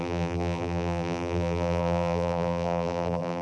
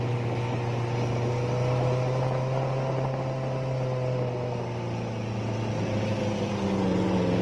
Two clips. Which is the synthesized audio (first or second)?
first